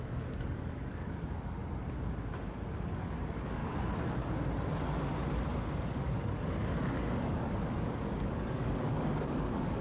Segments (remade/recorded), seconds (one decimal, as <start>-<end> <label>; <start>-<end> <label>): 0.0-1.6 remade; 1.6-2.7 recorded; 2.7-3.6 remade; 3.6-5.8 recorded; 5.8-9.8 remade

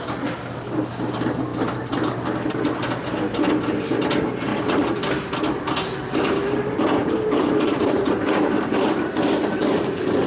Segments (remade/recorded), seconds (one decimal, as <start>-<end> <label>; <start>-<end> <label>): 0.0-4.5 recorded; 4.5-5.3 remade; 5.3-7.0 recorded; 7.0-9.6 remade; 9.6-10.3 recorded

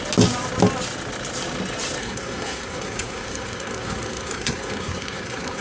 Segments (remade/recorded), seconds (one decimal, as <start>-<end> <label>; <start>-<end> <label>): 0.0-2.0 recorded; 2.0-5.6 remade

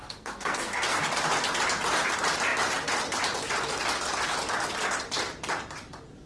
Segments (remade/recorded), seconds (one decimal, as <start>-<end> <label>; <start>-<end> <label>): 0.0-1.0 remade; 1.0-6.3 recorded

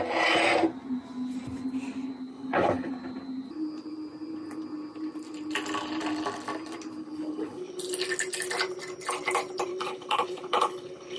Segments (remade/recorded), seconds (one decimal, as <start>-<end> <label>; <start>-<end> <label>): 0.0-2.3 recorded; 2.3-2.9 remade; 2.9-7.0 recorded; 7.0-7.8 remade; 7.8-9.7 recorded; 9.7-11.2 remade

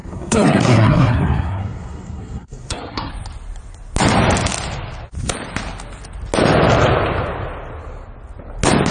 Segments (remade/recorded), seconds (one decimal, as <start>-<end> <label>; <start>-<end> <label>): 0.0-3.1 remade; 3.1-8.9 recorded

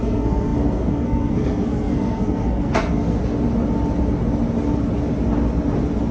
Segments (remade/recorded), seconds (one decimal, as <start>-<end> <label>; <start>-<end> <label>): 0.0-3.2 remade; 3.2-6.1 recorded